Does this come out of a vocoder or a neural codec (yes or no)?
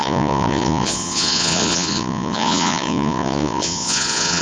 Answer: yes